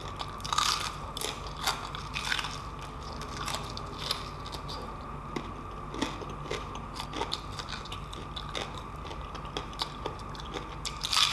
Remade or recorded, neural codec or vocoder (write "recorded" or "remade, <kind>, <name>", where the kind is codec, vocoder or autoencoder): recorded